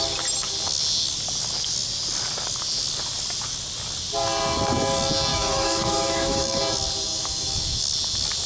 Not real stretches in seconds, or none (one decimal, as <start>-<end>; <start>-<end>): 5.3-6.6; 7.1-7.8